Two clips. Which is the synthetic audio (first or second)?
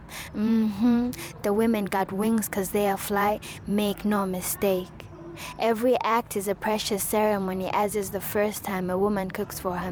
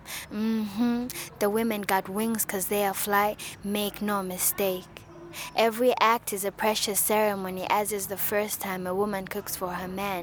first